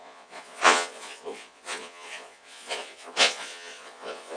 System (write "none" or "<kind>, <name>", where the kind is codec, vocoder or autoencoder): vocoder, Vocos